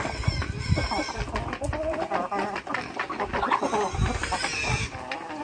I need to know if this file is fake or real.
real